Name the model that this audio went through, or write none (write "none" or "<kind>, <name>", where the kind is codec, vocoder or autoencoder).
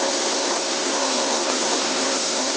codec, SNAC